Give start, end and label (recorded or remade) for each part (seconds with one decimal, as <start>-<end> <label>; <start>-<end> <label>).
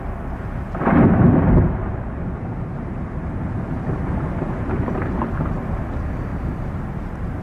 0.0-6.3 recorded; 6.3-6.8 remade; 6.8-7.4 recorded